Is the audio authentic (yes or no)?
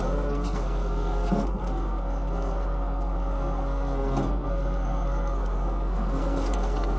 no